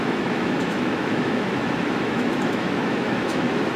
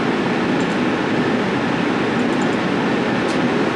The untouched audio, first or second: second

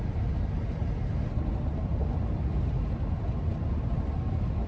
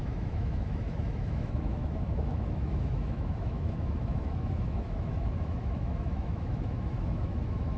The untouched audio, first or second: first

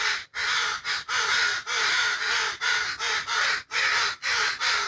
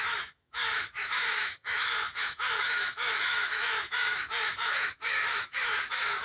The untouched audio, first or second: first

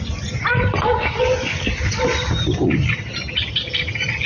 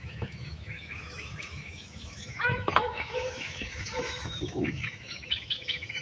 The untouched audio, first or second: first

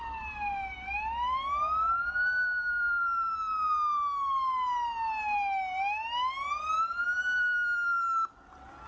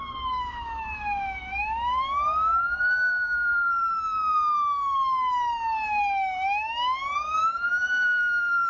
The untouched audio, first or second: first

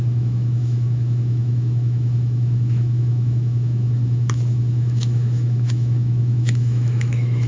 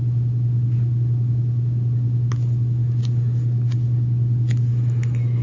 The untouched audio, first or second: second